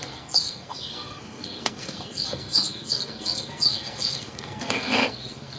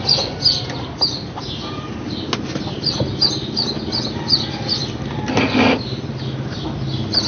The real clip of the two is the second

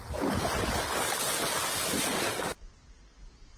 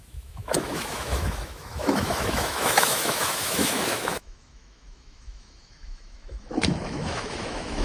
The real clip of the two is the first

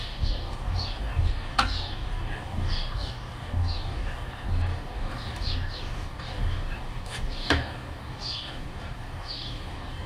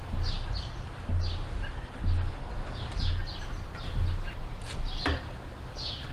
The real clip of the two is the second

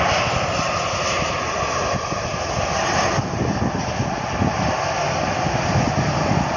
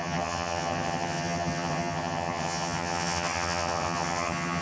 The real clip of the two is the first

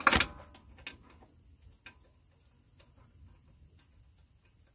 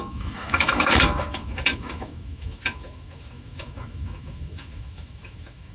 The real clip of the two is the first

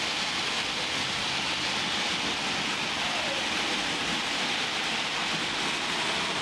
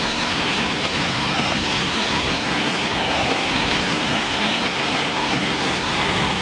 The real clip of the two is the first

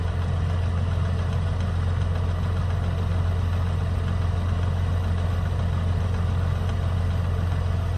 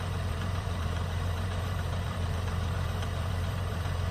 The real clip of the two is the first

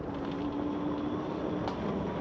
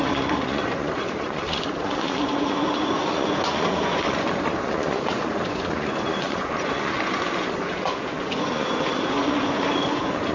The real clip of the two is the first